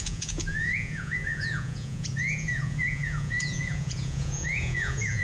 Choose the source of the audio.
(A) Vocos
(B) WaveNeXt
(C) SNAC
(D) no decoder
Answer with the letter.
A